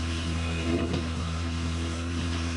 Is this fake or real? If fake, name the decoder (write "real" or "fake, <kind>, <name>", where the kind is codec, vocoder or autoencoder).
fake, codec, SNAC